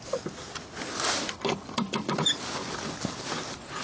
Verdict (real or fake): real